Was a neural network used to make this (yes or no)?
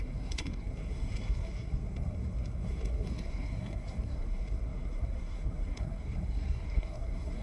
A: yes